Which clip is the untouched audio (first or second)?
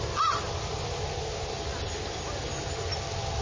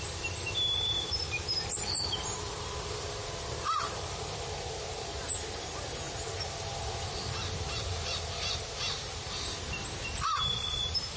first